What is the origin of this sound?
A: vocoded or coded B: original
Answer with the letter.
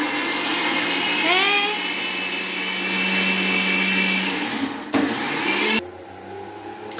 B